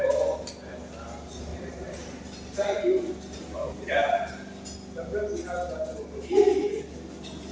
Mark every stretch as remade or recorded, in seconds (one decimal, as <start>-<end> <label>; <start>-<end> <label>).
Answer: 0.0-1.5 recorded; 1.5-2.8 remade; 2.8-7.5 recorded